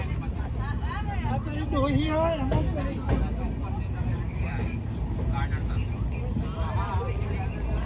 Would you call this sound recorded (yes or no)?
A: yes